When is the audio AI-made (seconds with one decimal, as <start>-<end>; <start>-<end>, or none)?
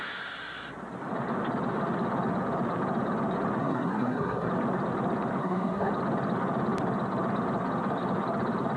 3.6-4.5; 5.4-5.9